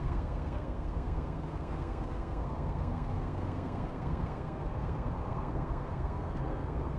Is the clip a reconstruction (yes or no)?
yes